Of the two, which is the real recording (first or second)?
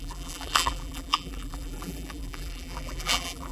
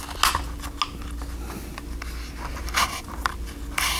second